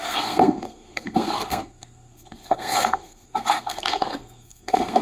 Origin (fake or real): fake